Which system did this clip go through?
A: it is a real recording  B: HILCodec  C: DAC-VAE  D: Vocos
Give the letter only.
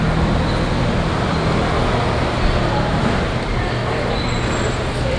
A